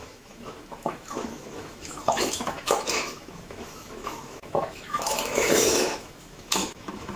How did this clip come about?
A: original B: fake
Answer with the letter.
B